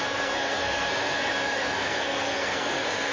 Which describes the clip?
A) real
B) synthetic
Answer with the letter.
B